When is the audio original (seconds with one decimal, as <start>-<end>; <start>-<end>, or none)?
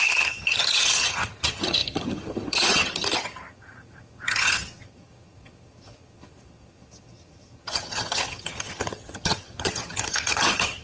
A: none